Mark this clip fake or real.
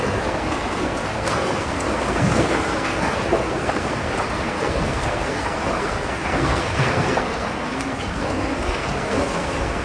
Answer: fake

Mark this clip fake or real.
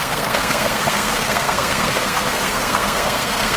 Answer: fake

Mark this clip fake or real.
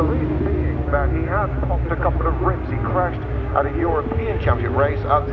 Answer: real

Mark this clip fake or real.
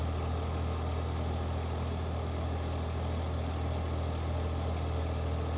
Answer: real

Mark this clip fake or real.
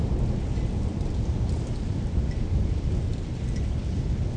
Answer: real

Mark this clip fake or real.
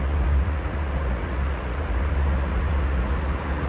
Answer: fake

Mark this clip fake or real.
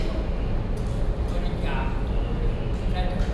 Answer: real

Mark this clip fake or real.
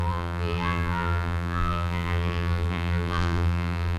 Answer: fake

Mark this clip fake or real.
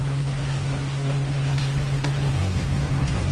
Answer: fake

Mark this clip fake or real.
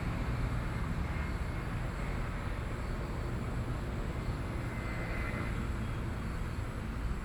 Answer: real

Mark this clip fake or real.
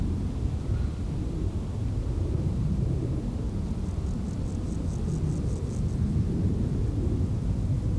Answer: real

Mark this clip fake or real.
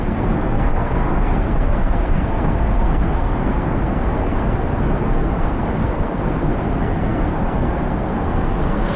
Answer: fake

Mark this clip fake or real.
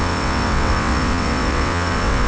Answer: fake